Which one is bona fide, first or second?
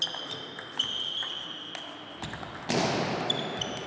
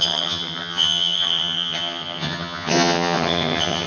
first